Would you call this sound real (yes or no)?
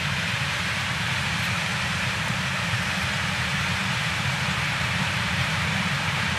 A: no